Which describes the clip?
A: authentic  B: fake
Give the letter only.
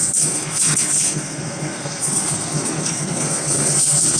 B